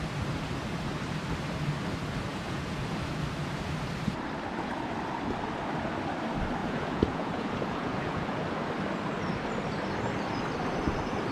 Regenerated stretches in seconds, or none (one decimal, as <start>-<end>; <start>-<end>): 2.3-2.8; 6.6-8.4